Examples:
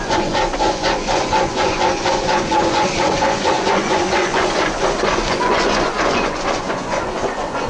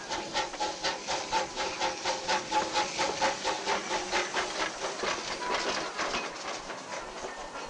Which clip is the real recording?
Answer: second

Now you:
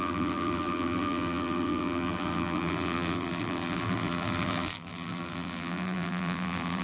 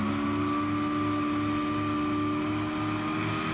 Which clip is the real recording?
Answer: second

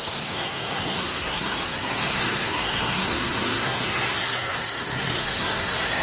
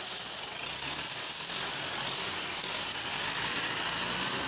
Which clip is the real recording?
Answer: second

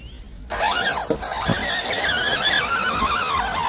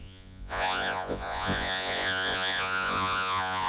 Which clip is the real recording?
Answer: first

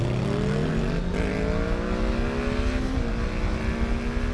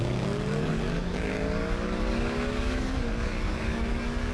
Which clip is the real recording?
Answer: first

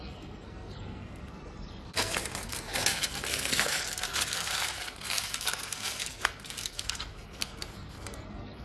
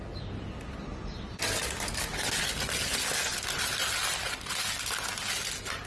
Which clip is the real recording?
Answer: second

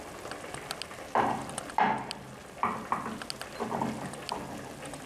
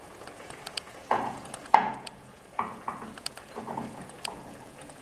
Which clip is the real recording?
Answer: first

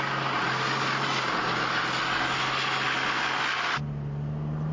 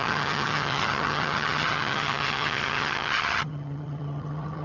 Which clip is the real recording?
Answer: first